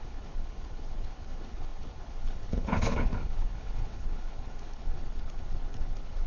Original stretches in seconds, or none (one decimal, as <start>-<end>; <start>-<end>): none